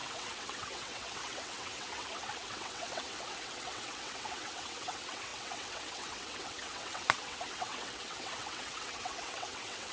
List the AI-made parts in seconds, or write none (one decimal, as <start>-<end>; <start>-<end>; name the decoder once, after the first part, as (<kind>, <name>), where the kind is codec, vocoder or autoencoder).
0.0-9.9 (vocoder, WaveNeXt)